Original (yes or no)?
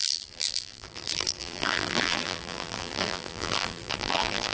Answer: no